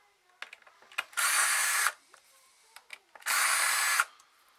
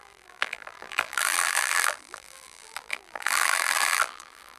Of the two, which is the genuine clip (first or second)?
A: first